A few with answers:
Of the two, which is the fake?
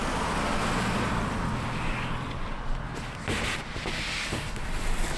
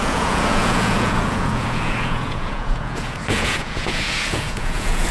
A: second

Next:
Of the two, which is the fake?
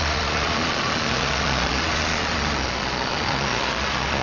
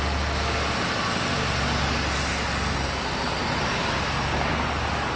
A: first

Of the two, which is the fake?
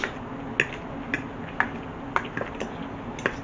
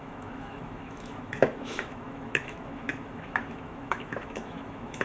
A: second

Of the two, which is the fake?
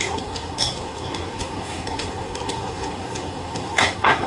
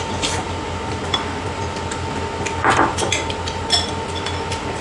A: first